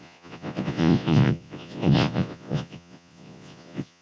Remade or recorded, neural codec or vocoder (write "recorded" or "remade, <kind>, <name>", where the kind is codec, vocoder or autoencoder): remade, vocoder, Vocos